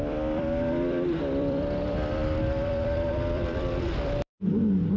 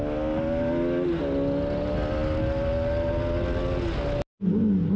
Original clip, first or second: second